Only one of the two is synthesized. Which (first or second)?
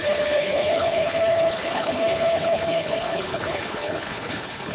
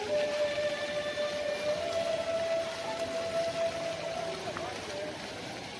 first